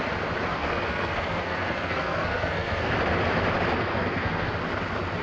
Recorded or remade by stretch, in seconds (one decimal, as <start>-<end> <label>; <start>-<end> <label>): 0.0-0.5 recorded; 0.5-2.9 remade; 2.9-3.9 recorded; 3.9-4.5 remade; 4.5-5.2 recorded